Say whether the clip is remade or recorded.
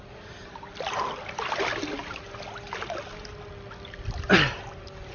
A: recorded